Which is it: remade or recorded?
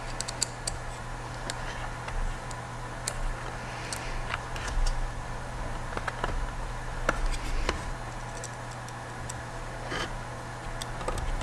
recorded